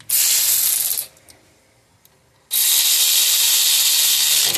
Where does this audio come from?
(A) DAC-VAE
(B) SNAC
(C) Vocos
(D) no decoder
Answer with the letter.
D